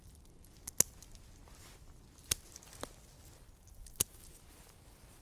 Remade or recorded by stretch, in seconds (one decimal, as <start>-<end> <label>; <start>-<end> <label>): 0.0-5.2 recorded